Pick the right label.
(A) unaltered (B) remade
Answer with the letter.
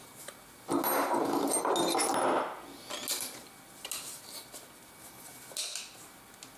A